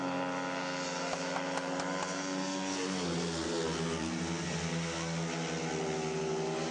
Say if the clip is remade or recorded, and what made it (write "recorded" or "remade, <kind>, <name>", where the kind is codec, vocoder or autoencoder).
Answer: recorded